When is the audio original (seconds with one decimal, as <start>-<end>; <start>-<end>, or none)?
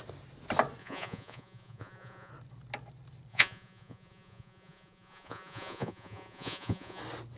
0.0-0.8; 2.3-3.3; 7.0-7.4